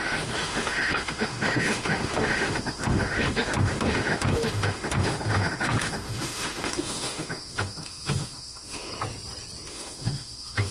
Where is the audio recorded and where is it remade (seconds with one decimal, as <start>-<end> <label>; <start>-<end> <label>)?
0.0-8.9 remade; 8.9-9.7 recorded; 9.7-10.7 remade